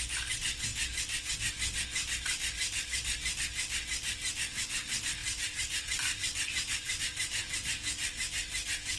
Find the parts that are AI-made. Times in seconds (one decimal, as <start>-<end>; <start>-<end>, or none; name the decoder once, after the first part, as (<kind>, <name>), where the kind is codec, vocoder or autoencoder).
none